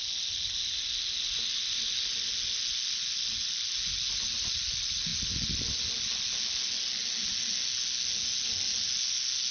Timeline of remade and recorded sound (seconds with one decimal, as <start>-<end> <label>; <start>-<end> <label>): 0.0-9.5 recorded